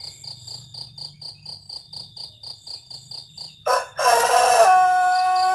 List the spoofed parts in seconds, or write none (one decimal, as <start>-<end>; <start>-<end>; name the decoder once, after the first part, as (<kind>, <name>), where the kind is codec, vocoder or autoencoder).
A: none